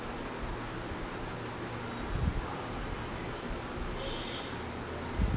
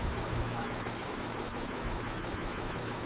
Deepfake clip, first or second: second